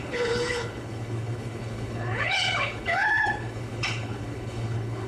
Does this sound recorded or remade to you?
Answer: remade